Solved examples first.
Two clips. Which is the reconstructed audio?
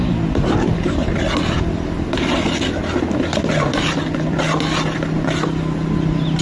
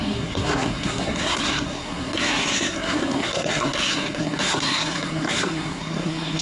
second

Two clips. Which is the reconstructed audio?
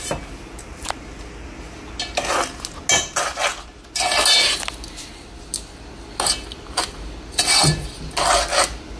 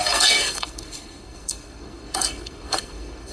second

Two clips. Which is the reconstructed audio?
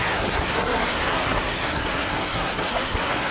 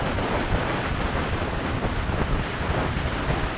first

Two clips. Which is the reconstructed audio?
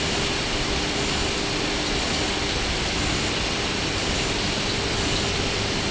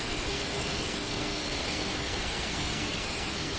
second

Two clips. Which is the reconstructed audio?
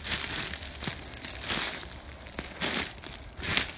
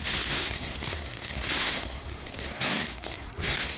second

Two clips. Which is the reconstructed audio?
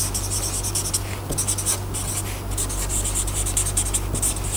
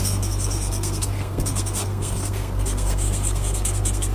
second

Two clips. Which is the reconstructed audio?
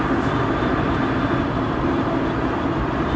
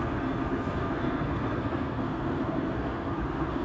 second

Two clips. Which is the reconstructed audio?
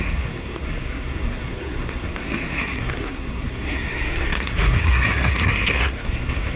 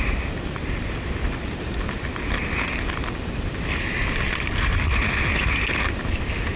first